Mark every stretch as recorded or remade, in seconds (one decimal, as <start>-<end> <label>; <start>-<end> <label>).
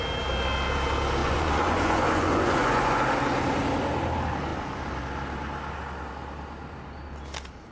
0.0-1.2 recorded; 1.2-3.0 remade; 3.0-7.7 recorded